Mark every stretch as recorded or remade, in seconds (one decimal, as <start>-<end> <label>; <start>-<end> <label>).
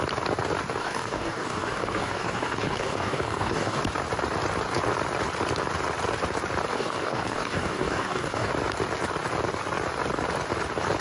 0.0-0.8 recorded; 0.8-3.8 remade; 3.8-6.7 recorded; 6.7-8.5 remade; 8.5-11.0 recorded